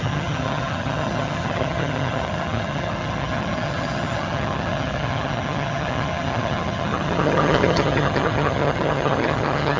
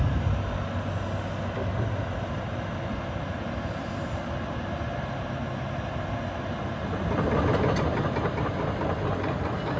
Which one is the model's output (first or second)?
first